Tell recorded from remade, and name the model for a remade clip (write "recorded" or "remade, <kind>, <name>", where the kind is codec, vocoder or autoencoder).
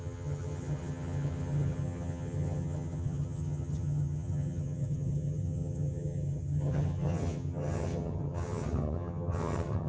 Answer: remade, vocoder, HiFi-GAN